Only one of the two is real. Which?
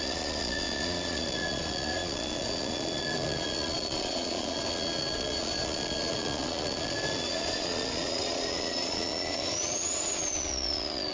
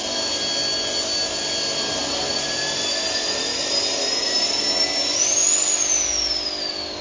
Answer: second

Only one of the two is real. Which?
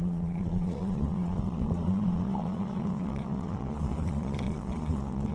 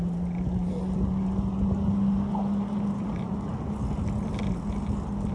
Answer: second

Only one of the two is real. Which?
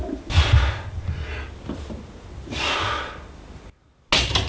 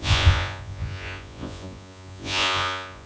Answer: first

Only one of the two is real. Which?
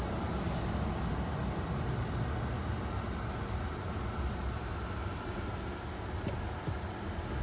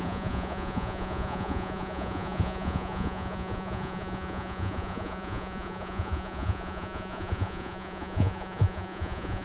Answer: first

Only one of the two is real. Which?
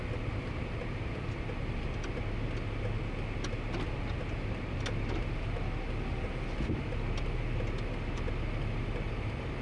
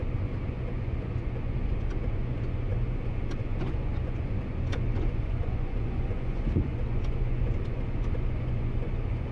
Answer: first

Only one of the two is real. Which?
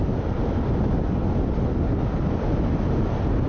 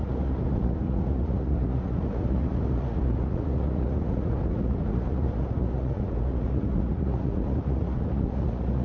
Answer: first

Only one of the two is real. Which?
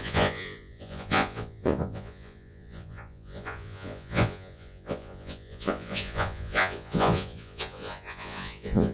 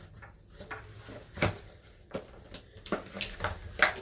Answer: second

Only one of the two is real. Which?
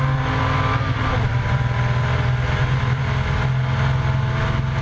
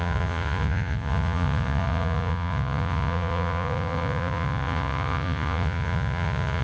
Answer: first